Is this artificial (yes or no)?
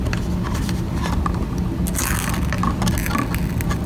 no